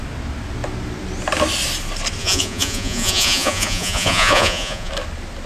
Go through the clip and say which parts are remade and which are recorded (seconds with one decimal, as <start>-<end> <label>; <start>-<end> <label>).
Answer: 0.0-2.2 recorded; 2.2-4.9 remade; 4.9-5.5 recorded